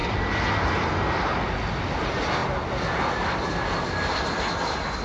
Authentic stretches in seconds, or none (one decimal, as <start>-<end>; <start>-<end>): 0.0-5.0